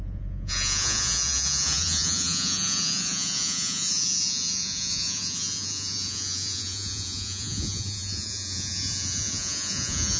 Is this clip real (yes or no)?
no